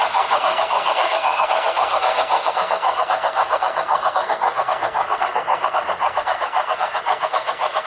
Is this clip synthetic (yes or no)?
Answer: yes